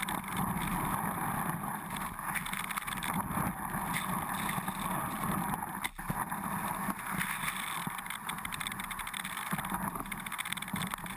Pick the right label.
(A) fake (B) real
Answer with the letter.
B